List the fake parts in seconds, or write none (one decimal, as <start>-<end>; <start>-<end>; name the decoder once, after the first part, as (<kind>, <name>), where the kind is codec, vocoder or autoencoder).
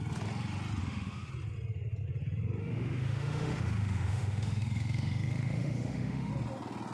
0.8-1.3 (autoencoder, DAC-VAE); 2.6-6.3